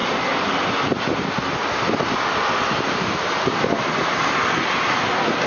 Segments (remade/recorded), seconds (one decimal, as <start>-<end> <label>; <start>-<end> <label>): 0.0-5.5 recorded